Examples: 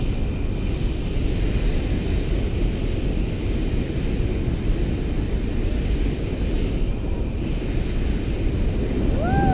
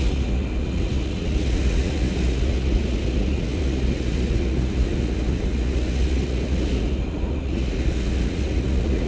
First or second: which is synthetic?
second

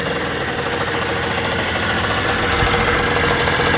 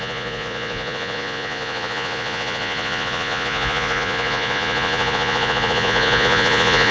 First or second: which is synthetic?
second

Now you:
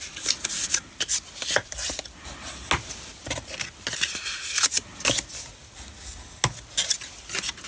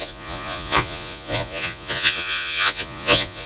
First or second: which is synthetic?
second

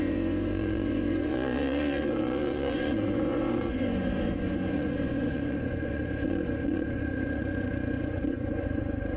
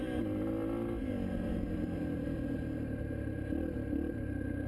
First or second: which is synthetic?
first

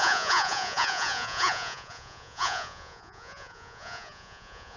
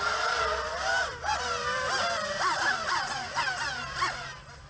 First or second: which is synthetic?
first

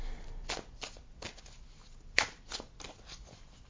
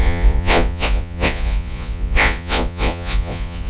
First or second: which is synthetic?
second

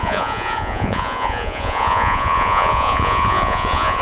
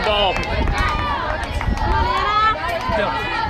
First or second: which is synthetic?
first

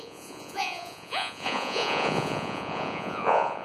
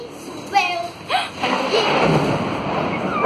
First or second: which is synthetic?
first